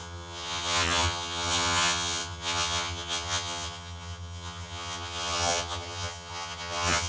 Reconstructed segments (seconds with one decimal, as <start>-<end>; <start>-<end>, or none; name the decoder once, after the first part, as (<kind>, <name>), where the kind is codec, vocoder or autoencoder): 0.0-7.1 (vocoder, HiFi-GAN)

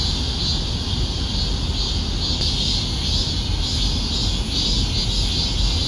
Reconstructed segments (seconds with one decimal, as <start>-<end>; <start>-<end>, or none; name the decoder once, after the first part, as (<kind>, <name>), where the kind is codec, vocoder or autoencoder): none

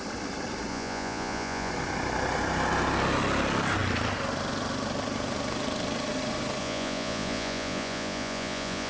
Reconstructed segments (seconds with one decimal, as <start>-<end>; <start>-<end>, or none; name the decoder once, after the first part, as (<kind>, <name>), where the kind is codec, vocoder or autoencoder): 0.7-1.7 (vocoder, Vocos); 6.6-8.9

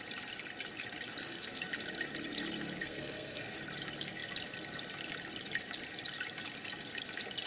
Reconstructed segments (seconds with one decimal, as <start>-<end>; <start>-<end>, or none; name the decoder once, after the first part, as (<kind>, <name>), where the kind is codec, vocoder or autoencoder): 1.2-1.7 (codec, SNAC); 2.8-3.6

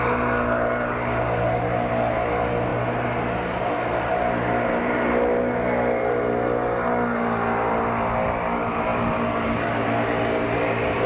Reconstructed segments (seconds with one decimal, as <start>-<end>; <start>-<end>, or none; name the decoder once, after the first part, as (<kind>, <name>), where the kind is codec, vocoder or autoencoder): none